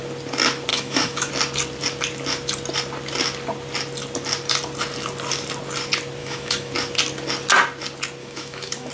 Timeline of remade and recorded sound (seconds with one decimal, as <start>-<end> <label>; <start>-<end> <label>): 0.0-0.7 recorded; 0.7-1.3 remade; 1.3-6.2 recorded; 6.2-6.7 remade; 6.7-8.2 recorded; 8.2-8.9 remade